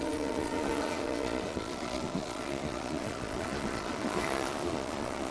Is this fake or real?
fake